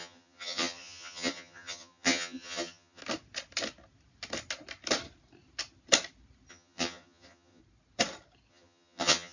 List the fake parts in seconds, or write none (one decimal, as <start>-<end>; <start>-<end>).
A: 0.0-3.0; 6.5-7.6; 8.5-9.3